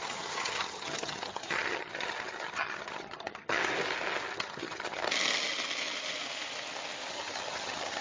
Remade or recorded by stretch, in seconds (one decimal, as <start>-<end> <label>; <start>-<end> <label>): 0.0-3.6 remade; 3.6-4.3 recorded; 4.3-5.0 remade; 5.0-7.1 recorded; 7.1-8.0 remade